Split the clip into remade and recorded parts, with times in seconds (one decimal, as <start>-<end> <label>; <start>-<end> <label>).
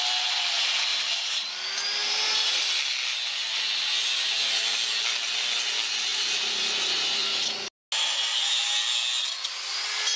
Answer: 0.0-0.9 recorded; 0.9-1.5 remade; 1.5-2.0 recorded; 2.0-2.6 remade; 2.6-10.2 recorded